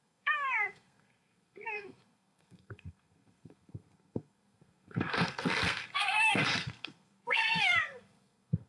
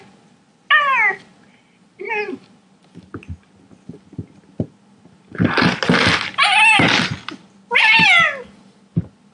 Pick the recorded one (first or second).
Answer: second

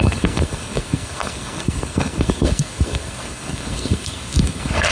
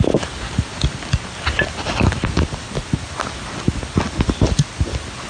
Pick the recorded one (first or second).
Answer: second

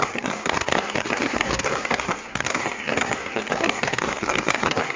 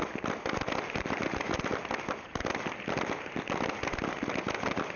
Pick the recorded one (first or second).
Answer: second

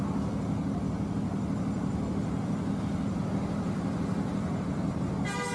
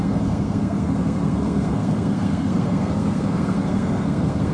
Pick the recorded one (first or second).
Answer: first